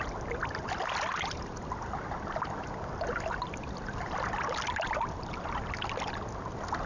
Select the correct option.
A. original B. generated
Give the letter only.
A